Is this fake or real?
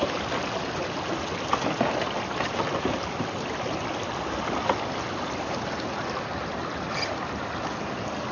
real